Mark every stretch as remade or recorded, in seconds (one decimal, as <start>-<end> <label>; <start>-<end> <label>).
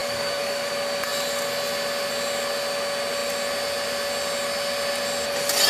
0.0-0.7 remade; 0.7-5.7 recorded